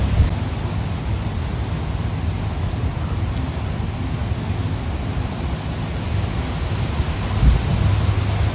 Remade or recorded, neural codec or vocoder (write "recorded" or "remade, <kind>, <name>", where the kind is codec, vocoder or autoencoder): recorded